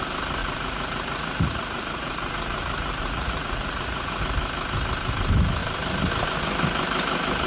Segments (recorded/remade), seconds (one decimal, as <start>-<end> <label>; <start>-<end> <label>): 0.0-0.4 recorded; 0.4-4.2 remade; 4.2-7.5 recorded